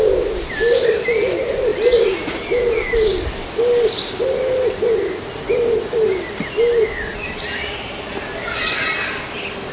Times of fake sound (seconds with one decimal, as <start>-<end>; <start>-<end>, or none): 7.1-7.7

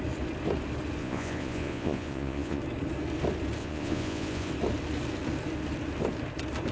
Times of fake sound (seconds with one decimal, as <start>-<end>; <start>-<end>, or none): 1.0-2.6; 3.6-4.5

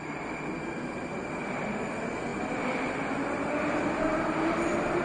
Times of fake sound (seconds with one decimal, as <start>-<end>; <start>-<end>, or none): 2.3-3.0

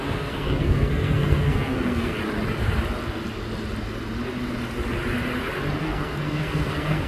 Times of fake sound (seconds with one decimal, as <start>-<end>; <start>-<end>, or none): 0.0-2.2; 5.8-7.1

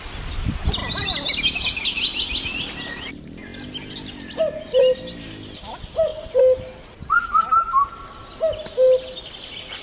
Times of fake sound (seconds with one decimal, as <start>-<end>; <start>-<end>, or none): none

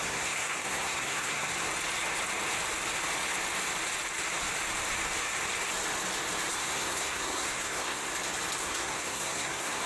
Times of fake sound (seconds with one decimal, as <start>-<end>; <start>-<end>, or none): 0.0-1.5; 6.5-8.1; 8.6-9.9